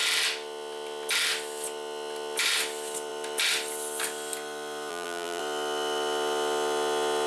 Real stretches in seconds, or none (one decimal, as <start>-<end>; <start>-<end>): 0.0-4.9; 5.4-7.3

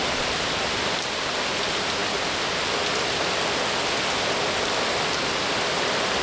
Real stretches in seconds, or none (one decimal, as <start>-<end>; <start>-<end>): 1.0-6.2

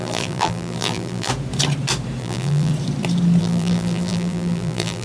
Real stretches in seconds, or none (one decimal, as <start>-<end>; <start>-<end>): 1.3-2.2; 2.7-3.4